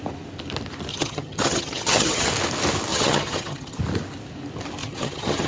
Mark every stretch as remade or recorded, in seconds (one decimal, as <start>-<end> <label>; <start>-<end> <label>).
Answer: 0.0-0.9 recorded; 0.9-2.3 remade; 2.3-2.9 recorded; 2.9-3.8 remade; 3.8-4.8 recorded; 4.8-5.5 remade